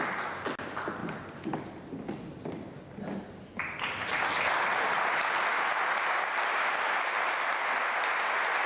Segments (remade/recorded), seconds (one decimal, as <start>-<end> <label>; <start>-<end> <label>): 0.0-8.7 recorded